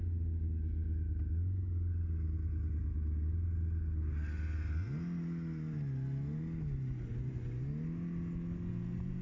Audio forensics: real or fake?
real